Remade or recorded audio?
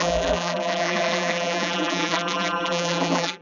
remade